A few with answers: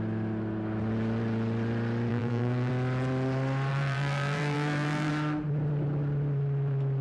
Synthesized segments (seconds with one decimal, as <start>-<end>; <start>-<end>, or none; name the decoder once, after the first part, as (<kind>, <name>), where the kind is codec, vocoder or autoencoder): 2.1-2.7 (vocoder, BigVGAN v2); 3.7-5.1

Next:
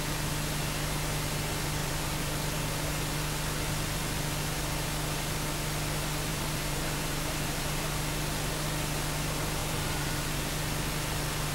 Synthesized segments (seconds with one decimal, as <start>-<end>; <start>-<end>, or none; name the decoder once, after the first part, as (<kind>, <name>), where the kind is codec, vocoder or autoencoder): 1.8-2.4 (vocoder, BigVGAN v2); 6.3-7.9; 9.6-10.5

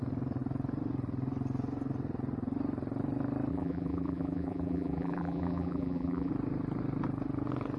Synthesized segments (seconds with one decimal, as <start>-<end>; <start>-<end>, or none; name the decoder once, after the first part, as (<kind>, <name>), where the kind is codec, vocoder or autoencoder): 3.5-6.3 (vocoder, BigVGAN v2)

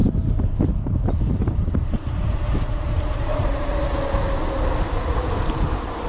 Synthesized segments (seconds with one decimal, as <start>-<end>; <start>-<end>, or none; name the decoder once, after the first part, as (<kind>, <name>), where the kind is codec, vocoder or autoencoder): 0.0-3.7 (vocoder, BigVGAN v2); 5.1-6.1

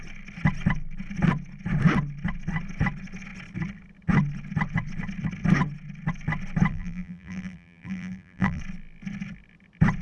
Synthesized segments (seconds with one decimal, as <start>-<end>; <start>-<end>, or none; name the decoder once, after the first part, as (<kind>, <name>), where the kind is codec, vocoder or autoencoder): 6.7-8.6 (vocoder, BigVGAN v2)

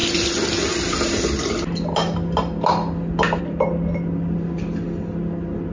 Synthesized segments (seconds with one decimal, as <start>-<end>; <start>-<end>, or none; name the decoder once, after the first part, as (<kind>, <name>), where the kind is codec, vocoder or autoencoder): none